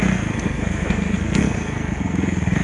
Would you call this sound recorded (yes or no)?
no